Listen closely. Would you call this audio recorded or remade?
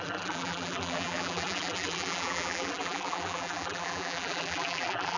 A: remade